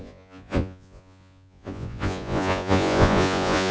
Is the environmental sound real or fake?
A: fake